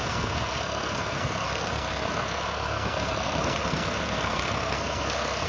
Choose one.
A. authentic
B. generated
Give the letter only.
B